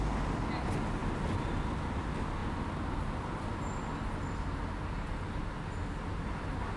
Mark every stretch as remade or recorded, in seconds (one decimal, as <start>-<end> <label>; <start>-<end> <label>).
0.0-6.8 recorded